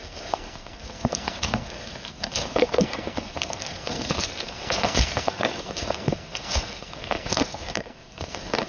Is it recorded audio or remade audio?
remade